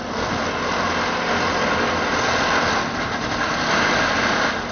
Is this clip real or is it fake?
real